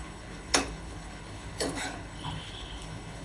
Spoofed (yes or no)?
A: yes